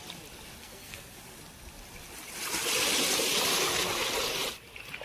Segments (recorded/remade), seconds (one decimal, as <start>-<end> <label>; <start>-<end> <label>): 0.0-0.6 recorded; 0.6-1.2 remade; 1.2-5.0 recorded